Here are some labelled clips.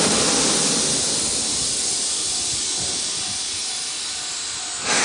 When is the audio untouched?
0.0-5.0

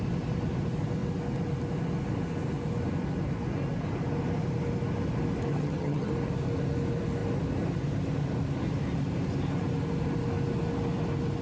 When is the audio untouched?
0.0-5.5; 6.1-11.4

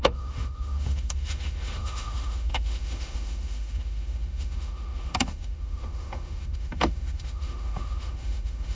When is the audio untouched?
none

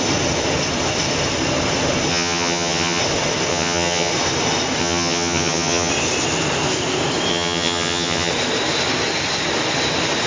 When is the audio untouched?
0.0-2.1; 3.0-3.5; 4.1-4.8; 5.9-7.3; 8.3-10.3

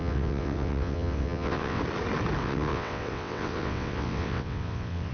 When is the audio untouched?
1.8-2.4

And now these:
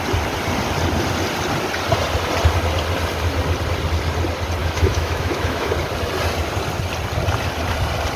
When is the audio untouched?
0.0-4.6; 5.7-8.2

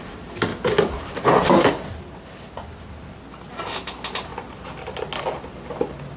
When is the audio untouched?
0.0-6.2

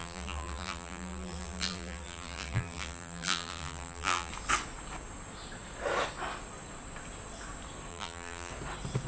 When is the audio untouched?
4.3-7.9; 8.5-9.1